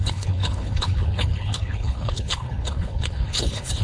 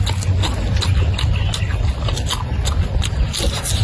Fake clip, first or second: first